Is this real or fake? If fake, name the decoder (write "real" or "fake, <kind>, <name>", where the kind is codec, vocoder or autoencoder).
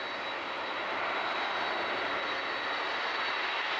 real